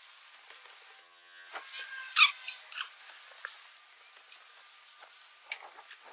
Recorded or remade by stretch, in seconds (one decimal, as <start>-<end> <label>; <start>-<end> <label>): 0.0-1.0 recorded; 1.0-1.5 remade; 1.5-6.1 recorded